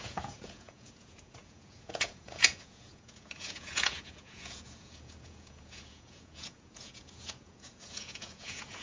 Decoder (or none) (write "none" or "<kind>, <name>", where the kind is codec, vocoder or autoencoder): vocoder, Vocos